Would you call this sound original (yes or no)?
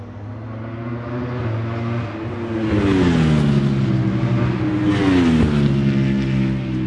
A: yes